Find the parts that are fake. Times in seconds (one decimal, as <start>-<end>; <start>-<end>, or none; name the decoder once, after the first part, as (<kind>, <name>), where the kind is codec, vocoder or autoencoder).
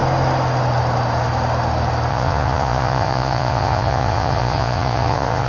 2.1-5.5 (vocoder, Vocos)